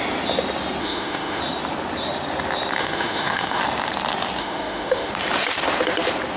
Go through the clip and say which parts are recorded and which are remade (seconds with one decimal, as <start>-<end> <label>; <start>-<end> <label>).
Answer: 0.0-0.8 recorded; 0.8-1.4 remade; 1.4-2.8 recorded; 2.8-3.6 remade; 3.6-4.4 recorded; 4.4-5.1 remade; 5.1-6.4 recorded